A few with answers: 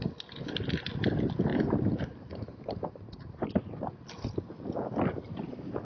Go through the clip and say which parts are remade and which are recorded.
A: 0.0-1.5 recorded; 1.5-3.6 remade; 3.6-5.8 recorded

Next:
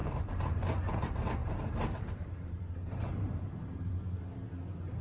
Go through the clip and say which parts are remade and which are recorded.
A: 0.0-0.6 remade; 0.6-1.4 recorded; 1.4-3.9 remade; 3.9-5.0 recorded

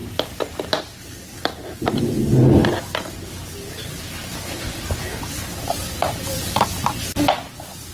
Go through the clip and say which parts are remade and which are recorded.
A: 0.0-0.8 recorded; 0.8-2.6 remade; 2.6-5.2 recorded; 5.2-7.9 remade